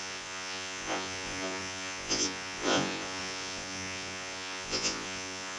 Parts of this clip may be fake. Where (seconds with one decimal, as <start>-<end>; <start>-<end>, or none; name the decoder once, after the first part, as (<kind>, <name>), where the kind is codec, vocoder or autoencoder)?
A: 0.0-5.6 (vocoder, Vocos)